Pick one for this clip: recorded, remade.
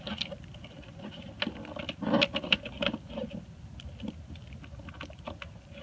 recorded